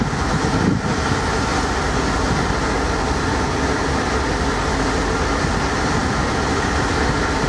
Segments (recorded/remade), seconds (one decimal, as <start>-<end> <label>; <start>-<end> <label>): 0.0-7.5 recorded